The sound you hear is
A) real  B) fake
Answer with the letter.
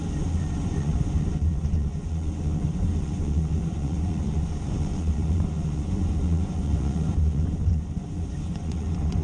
B